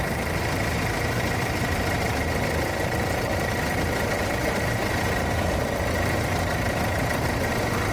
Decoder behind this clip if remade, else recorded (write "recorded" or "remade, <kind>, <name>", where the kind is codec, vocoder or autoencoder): remade, vocoder, BigVGAN v2